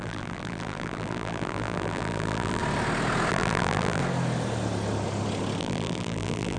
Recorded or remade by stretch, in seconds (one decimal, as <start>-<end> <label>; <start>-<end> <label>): 0.0-2.6 remade; 2.6-3.3 recorded; 3.3-4.0 remade; 4.0-5.6 recorded; 5.6-6.6 remade